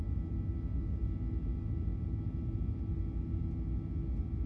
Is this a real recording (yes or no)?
yes